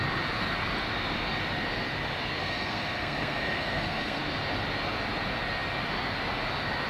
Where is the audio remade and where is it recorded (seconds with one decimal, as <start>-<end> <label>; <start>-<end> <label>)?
0.0-2.4 recorded; 2.4-4.2 remade; 4.2-6.9 recorded